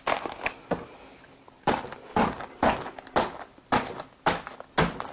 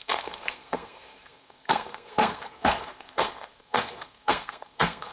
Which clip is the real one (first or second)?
first